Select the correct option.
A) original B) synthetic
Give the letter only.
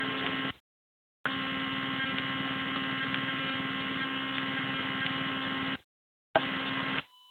A